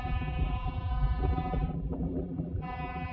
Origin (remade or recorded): remade